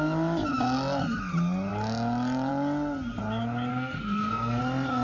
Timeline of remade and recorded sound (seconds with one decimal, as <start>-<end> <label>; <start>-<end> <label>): 0.0-3.7 recorded; 3.7-4.6 remade; 4.6-5.0 recorded